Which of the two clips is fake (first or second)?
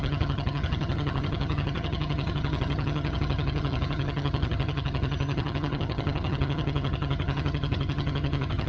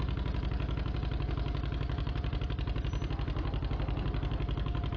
first